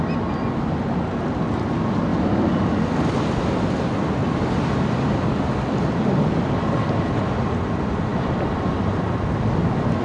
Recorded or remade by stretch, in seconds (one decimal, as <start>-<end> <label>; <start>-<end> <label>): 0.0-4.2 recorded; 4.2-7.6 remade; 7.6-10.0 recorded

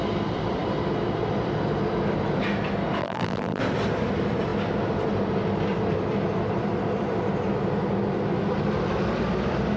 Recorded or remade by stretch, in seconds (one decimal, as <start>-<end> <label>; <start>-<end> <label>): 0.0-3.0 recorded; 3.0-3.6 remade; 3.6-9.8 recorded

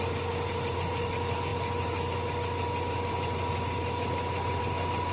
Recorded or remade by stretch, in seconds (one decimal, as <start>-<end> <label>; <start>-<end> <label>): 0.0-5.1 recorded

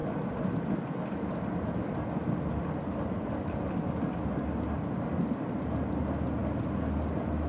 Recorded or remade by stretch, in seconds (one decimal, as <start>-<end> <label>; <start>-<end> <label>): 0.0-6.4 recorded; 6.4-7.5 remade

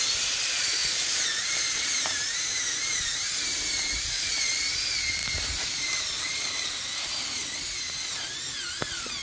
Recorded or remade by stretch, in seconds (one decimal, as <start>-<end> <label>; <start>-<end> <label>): 0.0-0.8 recorded; 0.8-4.5 remade; 4.5-5.2 recorded; 5.2-6.4 remade; 6.4-9.2 recorded

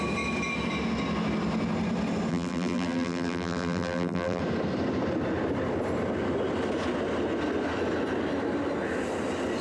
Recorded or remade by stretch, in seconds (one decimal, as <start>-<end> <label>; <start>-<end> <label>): 0.0-2.3 recorded; 2.3-4.4 remade; 4.4-9.6 recorded

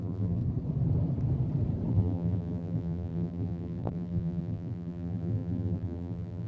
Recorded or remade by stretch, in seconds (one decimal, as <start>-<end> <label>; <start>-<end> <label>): 0.0-0.4 remade; 0.4-1.9 recorded; 1.9-6.5 remade

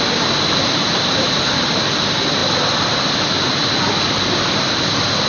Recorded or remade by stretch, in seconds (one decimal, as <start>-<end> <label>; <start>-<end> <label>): 0.0-0.9 recorded; 0.9-1.7 remade; 1.7-5.3 recorded